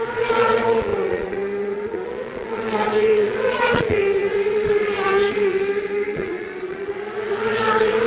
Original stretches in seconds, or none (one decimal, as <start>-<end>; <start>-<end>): none